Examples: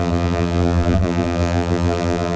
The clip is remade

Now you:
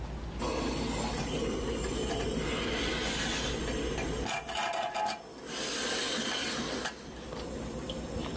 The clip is recorded